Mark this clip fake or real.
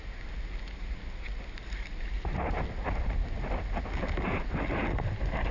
real